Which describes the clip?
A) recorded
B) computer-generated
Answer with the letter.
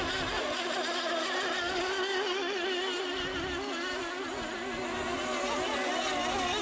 A